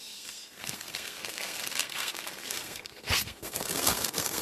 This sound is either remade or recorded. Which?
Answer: remade